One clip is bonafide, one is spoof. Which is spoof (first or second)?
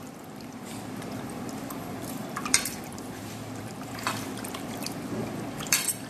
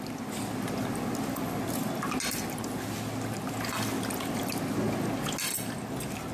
first